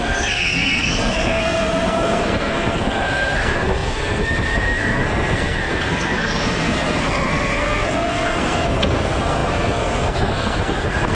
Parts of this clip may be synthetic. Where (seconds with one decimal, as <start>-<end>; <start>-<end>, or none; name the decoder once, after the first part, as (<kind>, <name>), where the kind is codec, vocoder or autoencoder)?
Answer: 0.0-11.1 (codec, SNAC)